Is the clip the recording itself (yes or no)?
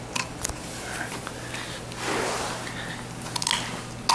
yes